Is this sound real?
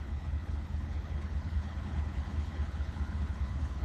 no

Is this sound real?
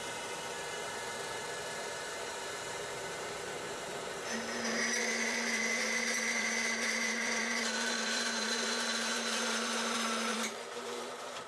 no